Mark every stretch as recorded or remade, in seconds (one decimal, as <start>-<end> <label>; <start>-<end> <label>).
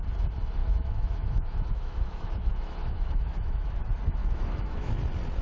0.0-0.6 recorded; 0.6-3.8 remade; 3.8-4.2 recorded; 4.2-4.9 remade; 4.9-5.4 recorded